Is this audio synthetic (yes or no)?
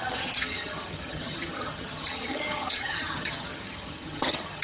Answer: yes